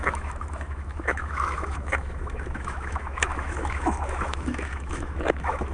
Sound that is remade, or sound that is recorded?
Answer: remade